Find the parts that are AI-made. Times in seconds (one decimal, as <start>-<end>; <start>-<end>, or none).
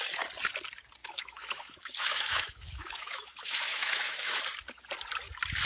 1.0-4.4